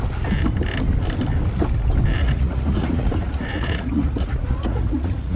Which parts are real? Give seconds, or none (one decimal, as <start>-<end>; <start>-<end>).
0.0-2.2